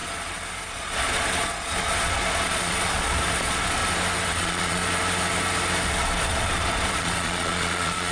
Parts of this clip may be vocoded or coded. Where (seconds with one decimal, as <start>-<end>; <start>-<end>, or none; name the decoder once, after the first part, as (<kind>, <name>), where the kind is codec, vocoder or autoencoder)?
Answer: 0.7-3.8 (vocoder, Vocos); 4.3-4.8; 5.9-8.1